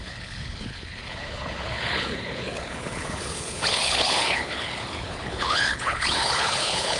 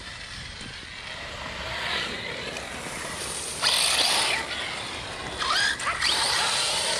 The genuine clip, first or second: second